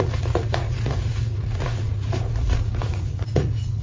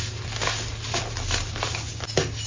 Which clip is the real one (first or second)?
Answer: second